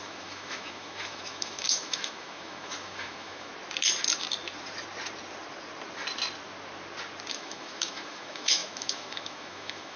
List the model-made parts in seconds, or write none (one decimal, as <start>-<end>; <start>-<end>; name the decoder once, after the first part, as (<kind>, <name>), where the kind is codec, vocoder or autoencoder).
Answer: 0.0-3.5 (autoencoder, DAC-VAE); 7.3-10.0